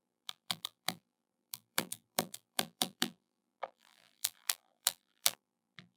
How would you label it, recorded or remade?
remade